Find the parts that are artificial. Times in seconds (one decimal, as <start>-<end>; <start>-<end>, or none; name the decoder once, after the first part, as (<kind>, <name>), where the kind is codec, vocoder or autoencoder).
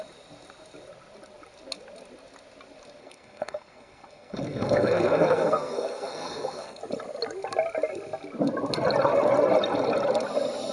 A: 3.0-6.8 (codec, SNAC)